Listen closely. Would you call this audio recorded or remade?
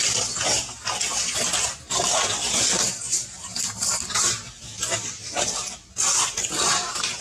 recorded